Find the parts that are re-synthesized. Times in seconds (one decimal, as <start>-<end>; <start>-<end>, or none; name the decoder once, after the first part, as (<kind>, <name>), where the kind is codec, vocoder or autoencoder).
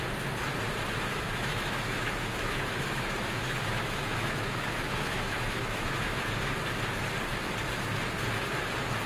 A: 1.1-6.4 (autoencoder, DAC-VAE)